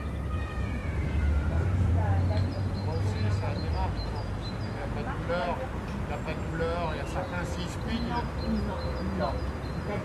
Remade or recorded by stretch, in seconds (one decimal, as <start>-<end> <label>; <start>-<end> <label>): 0.0-0.8 recorded; 0.8-2.2 remade; 2.2-10.0 recorded